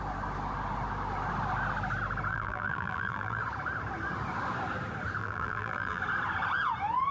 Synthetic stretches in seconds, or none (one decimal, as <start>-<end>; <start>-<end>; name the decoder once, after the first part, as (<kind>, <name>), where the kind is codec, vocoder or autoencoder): 2.3-3.4 (vocoder, BigVGAN v2); 5.2-6.0